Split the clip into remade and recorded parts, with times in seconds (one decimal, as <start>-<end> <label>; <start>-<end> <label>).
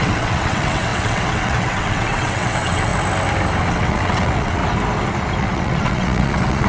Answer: 0.0-2.9 remade; 2.9-3.6 recorded; 3.6-4.6 remade; 4.6-5.4 recorded; 5.4-6.7 remade